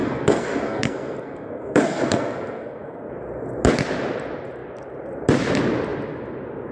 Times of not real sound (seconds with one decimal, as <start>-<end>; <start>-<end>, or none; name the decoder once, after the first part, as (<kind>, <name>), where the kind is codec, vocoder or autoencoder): 0.0-3.1 (codec, SNAC)